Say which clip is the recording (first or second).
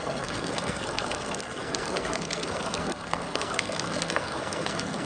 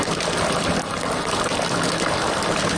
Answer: second